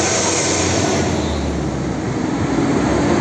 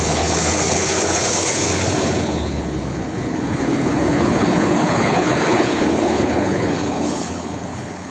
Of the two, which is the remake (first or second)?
second